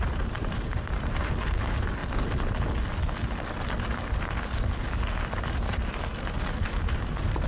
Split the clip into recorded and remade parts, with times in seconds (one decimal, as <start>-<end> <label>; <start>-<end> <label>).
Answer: 0.0-2.0 remade; 2.0-6.5 recorded; 6.5-7.5 remade